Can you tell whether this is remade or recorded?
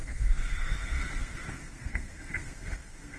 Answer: remade